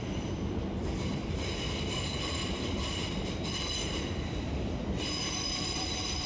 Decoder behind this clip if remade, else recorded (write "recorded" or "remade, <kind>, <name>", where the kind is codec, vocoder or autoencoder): remade, vocoder, BigVGAN v2